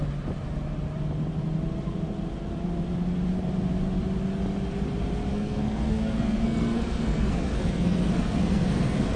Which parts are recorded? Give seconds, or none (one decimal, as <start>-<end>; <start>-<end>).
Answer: 0.0-5.3